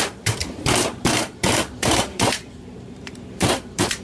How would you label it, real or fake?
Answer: fake